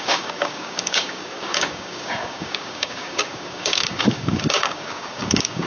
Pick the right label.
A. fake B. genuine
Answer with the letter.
A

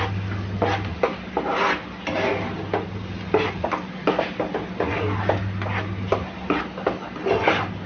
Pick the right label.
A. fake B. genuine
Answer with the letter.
B